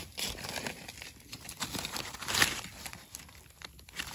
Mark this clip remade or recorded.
recorded